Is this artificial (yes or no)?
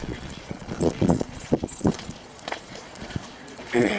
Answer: yes